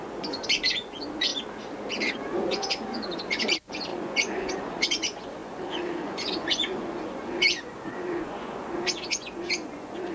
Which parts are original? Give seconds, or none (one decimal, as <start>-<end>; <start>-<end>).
1.3-2.1